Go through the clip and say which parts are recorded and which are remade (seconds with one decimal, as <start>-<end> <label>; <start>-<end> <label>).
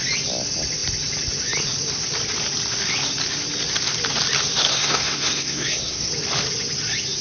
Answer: 0.0-4.7 recorded; 4.7-6.1 remade; 6.1-7.2 recorded